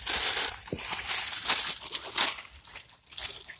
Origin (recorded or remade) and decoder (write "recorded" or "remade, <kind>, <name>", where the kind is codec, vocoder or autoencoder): recorded